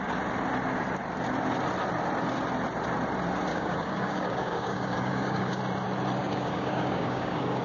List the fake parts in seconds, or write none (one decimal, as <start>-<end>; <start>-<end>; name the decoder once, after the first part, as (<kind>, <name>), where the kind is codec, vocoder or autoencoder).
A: 3.5-5.6 (codec, DAC); 6.2-7.6